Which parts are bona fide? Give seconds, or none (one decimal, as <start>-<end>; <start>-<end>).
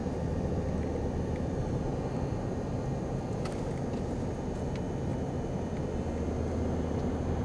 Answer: 0.0-1.9; 2.6-5.1; 5.8-7.4